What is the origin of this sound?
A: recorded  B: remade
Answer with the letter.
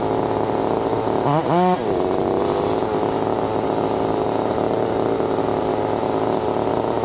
A